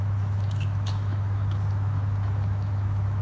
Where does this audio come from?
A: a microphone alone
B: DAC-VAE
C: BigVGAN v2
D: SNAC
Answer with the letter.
B